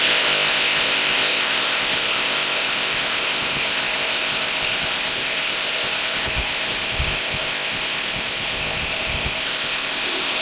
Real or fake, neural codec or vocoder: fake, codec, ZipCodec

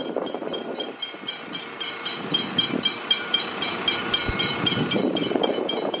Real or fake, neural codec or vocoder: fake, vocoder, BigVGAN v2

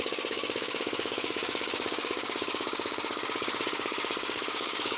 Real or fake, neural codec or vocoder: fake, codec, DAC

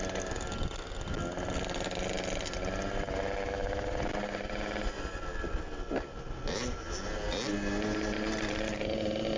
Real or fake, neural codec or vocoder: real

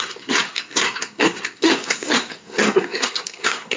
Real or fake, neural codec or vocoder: fake, codec, SNAC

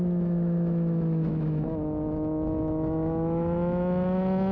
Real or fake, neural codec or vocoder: fake, autoencoder, DAC-VAE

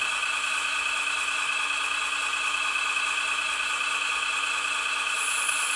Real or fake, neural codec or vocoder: real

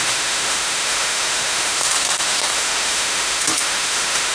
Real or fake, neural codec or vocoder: fake, autoencoder, DAC-VAE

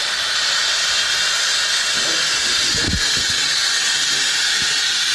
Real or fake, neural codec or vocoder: real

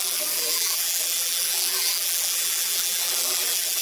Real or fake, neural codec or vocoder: fake, vocoder, BigVGAN v2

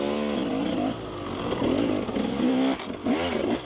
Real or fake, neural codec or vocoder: real